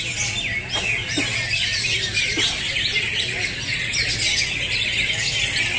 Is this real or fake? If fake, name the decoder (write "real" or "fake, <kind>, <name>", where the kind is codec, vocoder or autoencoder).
real